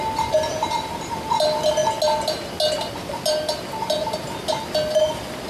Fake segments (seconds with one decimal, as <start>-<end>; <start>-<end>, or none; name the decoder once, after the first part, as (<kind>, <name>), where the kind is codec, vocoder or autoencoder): none